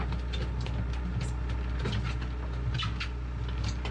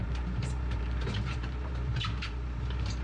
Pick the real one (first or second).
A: first